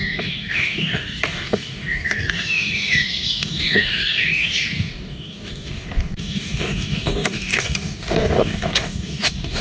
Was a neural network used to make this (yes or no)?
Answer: yes